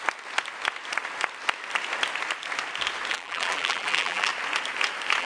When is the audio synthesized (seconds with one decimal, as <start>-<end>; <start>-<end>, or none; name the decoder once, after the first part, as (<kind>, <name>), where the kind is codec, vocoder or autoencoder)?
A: 3.1-4.3 (vocoder, BigVGAN v2)